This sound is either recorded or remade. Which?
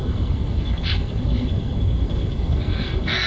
remade